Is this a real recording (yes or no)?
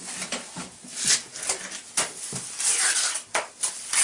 yes